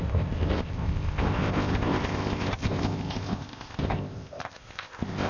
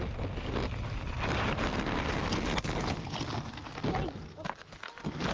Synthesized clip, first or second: first